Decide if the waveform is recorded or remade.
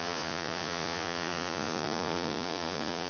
remade